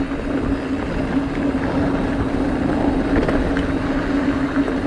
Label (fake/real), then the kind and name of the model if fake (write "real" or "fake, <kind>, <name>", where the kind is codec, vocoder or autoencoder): real